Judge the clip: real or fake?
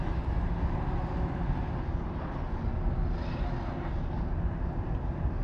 real